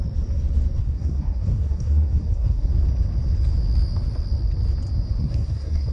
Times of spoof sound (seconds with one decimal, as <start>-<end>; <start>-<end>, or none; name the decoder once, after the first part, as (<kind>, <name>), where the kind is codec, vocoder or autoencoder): 0.8-2.7 (codec, SNAC); 5.2-5.9